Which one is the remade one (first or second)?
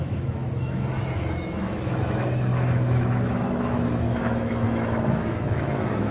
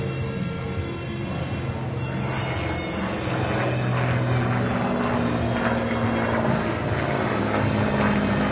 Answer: first